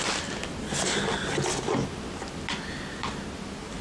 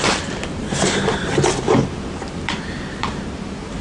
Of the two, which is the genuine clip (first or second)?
first